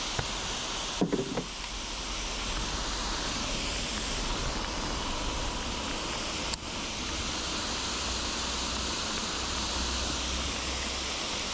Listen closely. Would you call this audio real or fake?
real